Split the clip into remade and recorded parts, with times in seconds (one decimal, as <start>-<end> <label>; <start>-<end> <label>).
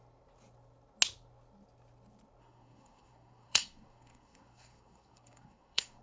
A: 0.0-2.4 recorded; 2.4-6.0 remade